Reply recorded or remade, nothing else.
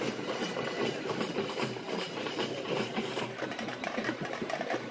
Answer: remade